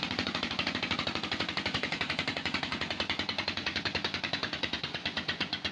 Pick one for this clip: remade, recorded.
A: remade